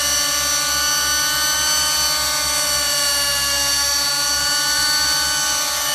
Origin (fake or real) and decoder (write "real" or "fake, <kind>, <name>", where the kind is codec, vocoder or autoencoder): real